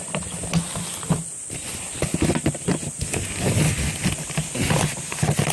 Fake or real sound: real